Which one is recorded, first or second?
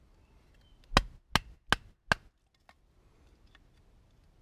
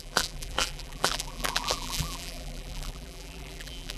first